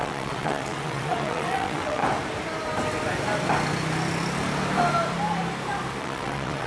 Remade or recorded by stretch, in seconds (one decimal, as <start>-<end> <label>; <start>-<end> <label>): 0.0-2.0 remade; 2.0-6.0 recorded; 6.0-6.7 remade